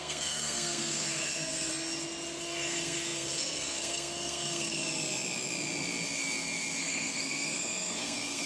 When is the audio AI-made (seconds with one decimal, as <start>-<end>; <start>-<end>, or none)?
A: 0.0-1.7; 2.4-4.8; 6.8-8.5